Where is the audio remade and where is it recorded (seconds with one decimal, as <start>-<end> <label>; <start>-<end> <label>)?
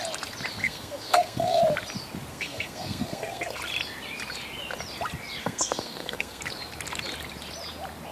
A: 0.0-0.6 recorded; 0.6-1.6 remade; 1.6-2.3 recorded; 2.3-3.6 remade; 3.6-5.4 recorded; 5.4-6.4 remade; 6.4-8.1 recorded